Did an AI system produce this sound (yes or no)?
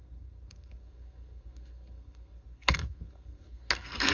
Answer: yes